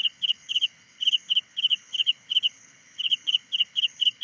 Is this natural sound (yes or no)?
no